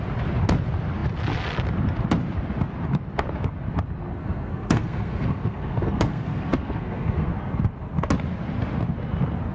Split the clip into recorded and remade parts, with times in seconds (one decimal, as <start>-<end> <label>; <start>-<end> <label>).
0.0-4.2 recorded; 4.2-7.3 remade; 7.3-9.5 recorded